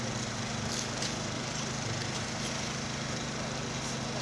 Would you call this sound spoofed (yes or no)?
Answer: no